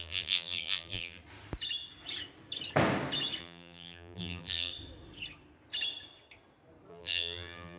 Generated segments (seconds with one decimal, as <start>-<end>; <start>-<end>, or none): 0.0-1.2; 3.4-4.7; 6.9-7.8